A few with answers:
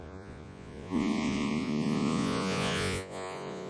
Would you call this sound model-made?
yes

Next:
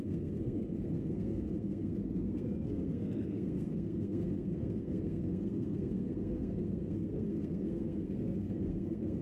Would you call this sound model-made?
yes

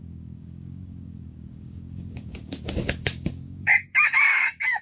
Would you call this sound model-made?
yes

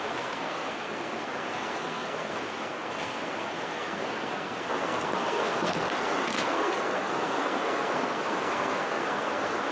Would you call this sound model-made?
yes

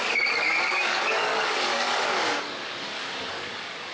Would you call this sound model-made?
yes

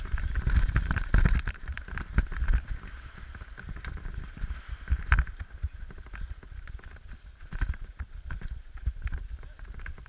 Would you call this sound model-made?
no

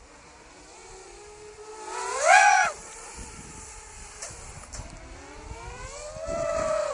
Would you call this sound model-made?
no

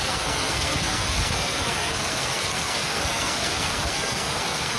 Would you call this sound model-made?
yes